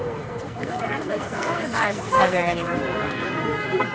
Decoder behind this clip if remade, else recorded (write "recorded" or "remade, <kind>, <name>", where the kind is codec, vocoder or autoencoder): remade, codec, SNAC